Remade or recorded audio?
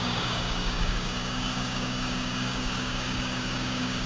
remade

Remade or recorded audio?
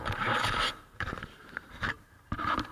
remade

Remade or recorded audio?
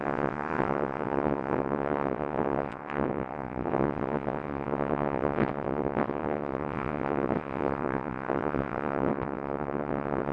remade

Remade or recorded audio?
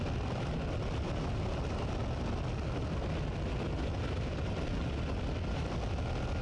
remade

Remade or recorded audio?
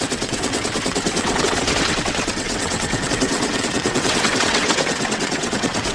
remade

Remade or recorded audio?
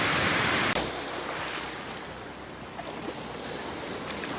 recorded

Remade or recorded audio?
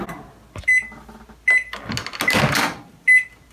recorded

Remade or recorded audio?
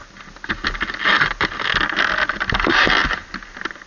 recorded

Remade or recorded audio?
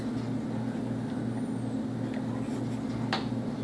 recorded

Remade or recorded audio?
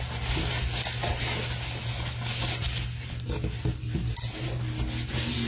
recorded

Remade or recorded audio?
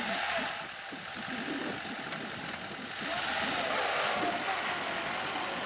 recorded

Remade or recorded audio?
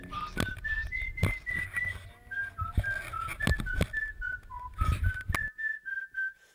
recorded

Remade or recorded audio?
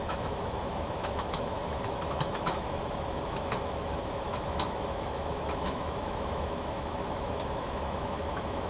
remade